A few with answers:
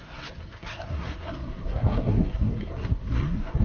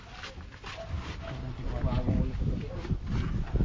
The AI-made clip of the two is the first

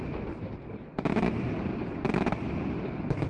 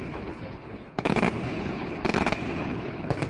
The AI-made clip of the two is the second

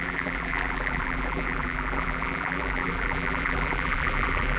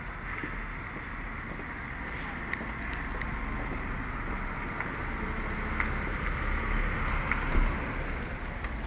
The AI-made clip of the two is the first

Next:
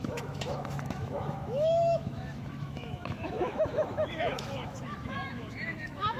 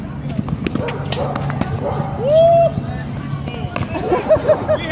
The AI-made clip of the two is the first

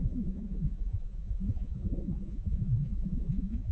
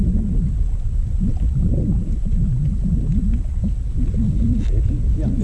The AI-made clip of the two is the first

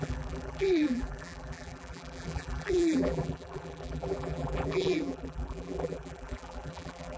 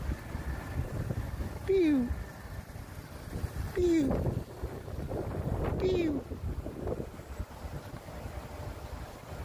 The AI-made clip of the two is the first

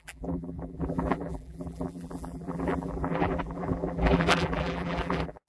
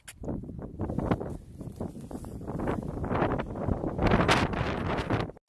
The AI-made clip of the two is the first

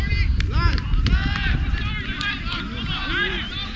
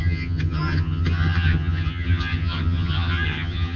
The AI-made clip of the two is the second